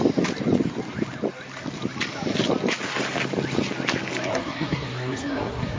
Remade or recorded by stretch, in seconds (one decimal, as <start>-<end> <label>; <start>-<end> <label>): 0.0-4.3 recorded; 4.3-5.8 remade